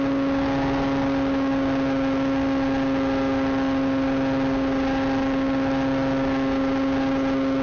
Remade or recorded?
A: recorded